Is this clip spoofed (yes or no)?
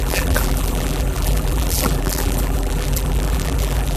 yes